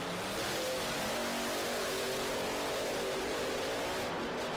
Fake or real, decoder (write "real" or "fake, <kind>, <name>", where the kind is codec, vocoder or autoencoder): real